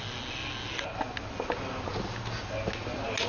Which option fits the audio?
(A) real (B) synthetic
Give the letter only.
A